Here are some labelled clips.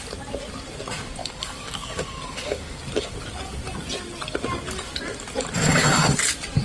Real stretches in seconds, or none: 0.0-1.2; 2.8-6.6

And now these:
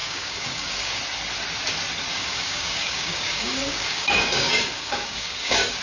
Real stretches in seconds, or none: 1.0-2.1